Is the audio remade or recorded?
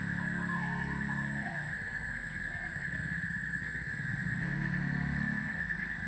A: remade